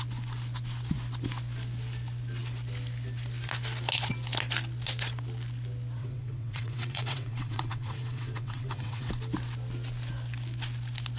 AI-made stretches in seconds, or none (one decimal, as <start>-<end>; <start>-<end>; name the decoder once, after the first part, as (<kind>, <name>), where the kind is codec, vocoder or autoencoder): 6.0-9.1 (vocoder, WaveNeXt)

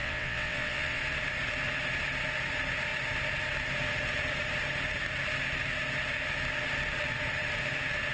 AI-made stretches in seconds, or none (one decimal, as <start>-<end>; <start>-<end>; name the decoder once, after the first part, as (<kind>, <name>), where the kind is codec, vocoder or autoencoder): 0.0-1.0 (vocoder, WaveNeXt)

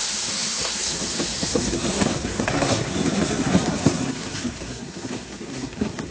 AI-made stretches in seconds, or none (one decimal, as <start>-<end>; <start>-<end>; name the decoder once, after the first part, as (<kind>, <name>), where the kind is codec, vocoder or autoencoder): 0.0-6.1 (codec, SNAC)

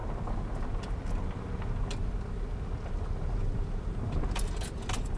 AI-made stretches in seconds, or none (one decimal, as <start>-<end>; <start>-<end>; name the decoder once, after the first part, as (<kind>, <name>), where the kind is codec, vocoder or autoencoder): none